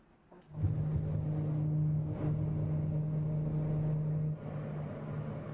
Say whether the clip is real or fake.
real